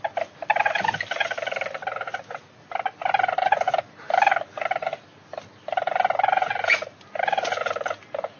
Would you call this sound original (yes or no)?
yes